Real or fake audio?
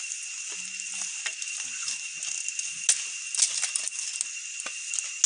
real